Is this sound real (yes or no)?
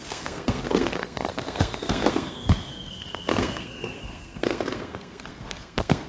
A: no